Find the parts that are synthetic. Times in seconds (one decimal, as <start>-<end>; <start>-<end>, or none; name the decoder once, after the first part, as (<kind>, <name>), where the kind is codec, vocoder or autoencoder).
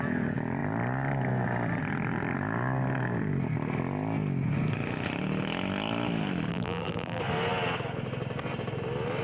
6.5-7.2 (vocoder, BigVGAN v2)